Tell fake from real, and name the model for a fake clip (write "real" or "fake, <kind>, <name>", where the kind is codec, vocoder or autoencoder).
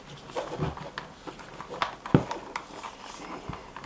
real